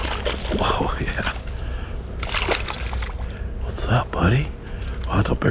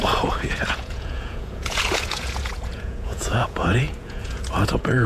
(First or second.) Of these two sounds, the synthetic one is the second